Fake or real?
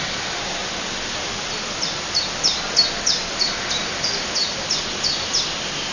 real